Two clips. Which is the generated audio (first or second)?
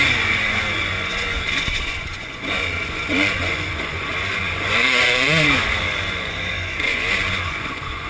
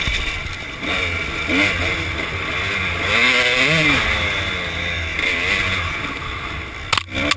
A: first